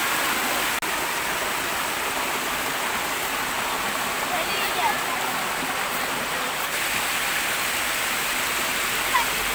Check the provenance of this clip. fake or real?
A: real